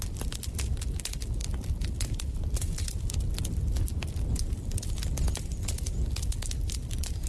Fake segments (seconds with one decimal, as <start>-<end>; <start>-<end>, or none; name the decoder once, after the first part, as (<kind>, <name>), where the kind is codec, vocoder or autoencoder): none